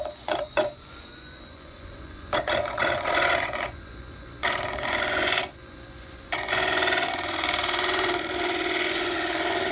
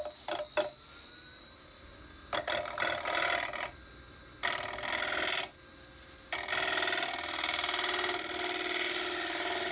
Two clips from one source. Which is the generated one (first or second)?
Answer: first